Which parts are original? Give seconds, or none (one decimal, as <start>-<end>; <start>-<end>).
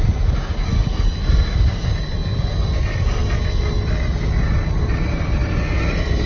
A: 0.7-1.5; 2.2-2.8; 3.2-4.8; 5.4-6.3